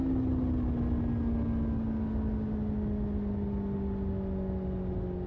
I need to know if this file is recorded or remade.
recorded